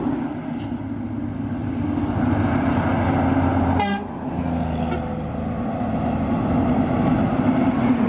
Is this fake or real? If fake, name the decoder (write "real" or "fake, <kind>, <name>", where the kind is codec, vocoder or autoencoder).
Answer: real